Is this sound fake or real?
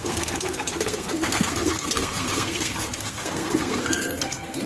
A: fake